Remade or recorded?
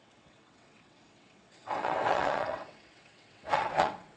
remade